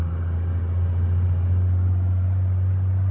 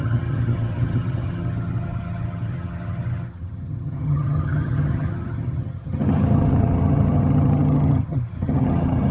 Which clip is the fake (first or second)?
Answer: second